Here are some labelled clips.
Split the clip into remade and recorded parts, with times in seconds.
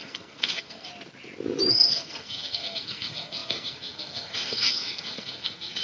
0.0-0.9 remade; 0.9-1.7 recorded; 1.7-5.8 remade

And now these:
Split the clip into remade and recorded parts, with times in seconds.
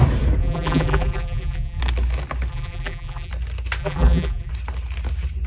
0.0-0.4 recorded; 0.4-1.8 remade; 1.8-2.5 recorded; 2.5-3.3 remade; 3.3-3.8 recorded; 3.8-4.5 remade; 4.5-5.5 recorded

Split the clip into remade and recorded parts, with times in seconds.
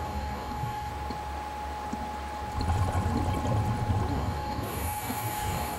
0.0-0.9 remade; 0.9-4.1 recorded; 4.1-5.8 remade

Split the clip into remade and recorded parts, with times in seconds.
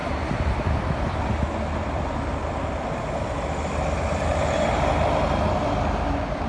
0.0-1.3 remade; 1.3-6.5 recorded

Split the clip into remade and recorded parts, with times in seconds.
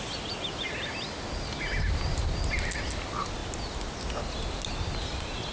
0.0-5.5 recorded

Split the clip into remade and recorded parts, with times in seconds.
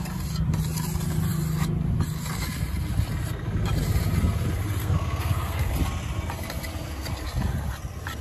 0.0-4.8 recorded; 4.8-5.7 remade; 5.7-8.2 recorded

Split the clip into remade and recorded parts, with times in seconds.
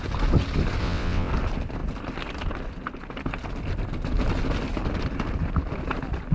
0.0-0.8 recorded; 0.8-1.3 remade; 1.3-6.3 recorded